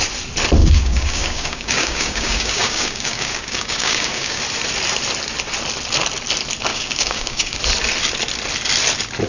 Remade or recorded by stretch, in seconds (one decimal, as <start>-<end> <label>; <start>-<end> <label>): 0.0-0.6 recorded; 0.6-4.4 remade; 4.4-6.7 recorded; 6.7-7.6 remade; 7.6-9.3 recorded